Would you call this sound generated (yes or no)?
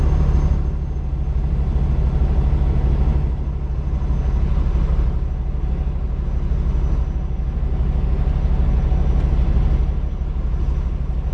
no